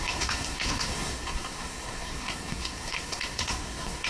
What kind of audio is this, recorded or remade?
remade